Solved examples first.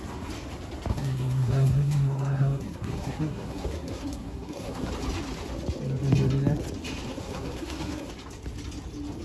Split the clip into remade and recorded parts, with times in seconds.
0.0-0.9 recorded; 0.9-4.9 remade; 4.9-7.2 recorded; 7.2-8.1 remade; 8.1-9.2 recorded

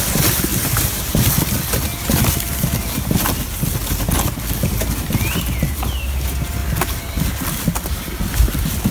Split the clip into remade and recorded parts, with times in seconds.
0.0-8.9 recorded

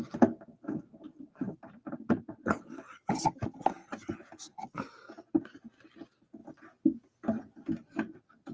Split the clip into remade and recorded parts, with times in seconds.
0.0-8.5 recorded

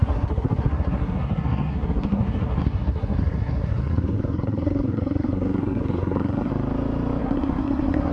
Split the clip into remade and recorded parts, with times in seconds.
0.0-6.5 remade; 6.5-7.2 recorded; 7.2-8.1 remade

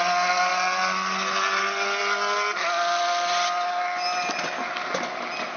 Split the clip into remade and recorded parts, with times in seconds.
0.0-5.6 recorded

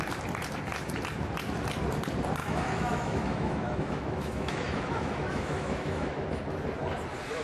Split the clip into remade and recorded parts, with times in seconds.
0.0-2.4 recorded; 2.4-6.3 remade; 6.3-7.4 recorded

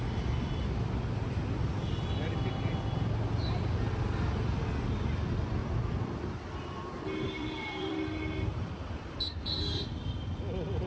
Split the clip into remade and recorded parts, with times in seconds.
0.0-5.6 recorded; 5.6-10.4 remade; 10.4-10.9 recorded

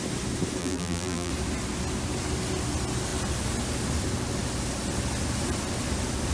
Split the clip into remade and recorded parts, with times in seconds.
0.0-0.6 recorded; 0.6-1.3 remade; 1.3-6.3 recorded